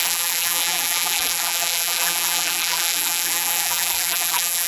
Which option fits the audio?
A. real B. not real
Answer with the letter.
B